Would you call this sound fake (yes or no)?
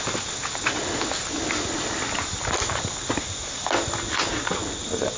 no